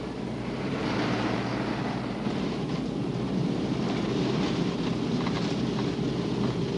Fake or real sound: real